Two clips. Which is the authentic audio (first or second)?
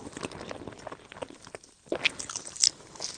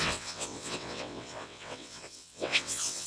first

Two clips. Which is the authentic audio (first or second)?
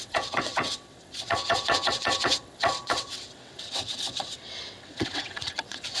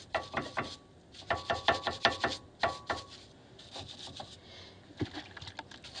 second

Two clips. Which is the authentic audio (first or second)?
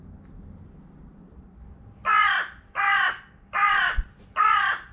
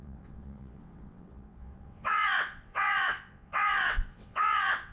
first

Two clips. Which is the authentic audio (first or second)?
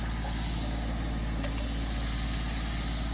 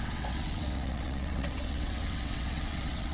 first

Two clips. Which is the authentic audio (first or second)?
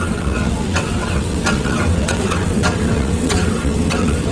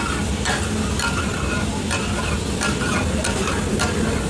second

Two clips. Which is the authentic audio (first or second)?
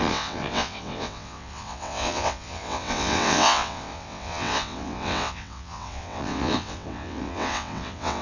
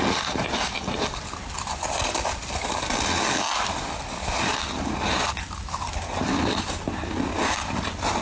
second